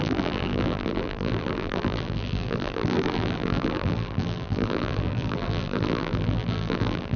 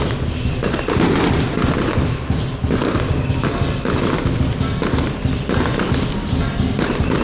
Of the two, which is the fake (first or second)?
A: first